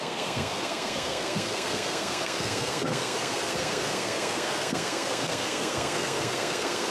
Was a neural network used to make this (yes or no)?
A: yes